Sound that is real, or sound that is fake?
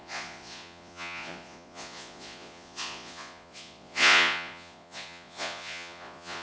fake